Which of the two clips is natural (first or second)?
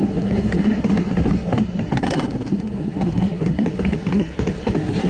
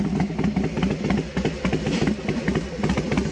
second